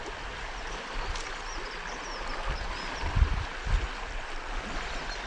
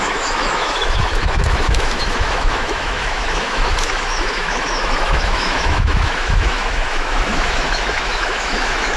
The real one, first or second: first